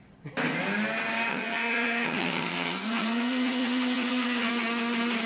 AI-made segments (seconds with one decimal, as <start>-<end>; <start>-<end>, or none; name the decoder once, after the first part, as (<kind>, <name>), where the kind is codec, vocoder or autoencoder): 1.3-4.5 (vocoder, HiFi-GAN)